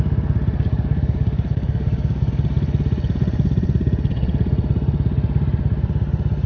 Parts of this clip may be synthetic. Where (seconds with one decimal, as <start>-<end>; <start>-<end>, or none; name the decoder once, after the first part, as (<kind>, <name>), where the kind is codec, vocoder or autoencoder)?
0.7-2.3 (codec, DAC)